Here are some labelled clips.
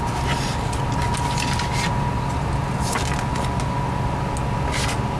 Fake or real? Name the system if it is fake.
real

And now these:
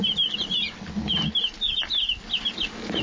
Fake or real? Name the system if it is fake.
real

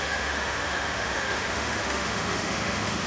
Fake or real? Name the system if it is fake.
fake, autoencoder, DAC-VAE